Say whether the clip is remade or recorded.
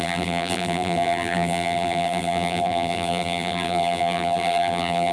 remade